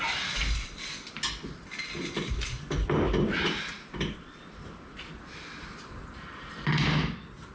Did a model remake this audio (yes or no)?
no